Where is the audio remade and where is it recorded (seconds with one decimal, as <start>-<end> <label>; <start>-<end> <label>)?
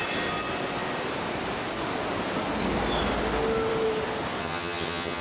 0.0-4.4 recorded; 4.4-5.2 remade